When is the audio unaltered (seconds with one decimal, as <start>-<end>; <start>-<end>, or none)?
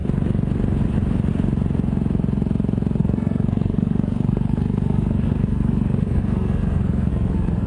0.0-3.0